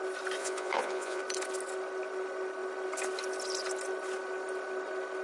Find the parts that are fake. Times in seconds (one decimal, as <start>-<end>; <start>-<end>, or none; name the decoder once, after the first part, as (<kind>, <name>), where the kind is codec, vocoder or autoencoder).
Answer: 0.4-1.2 (vocoder, Vocos)